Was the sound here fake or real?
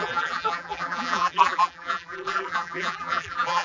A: fake